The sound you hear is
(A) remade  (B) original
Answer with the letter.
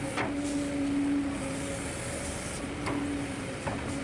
B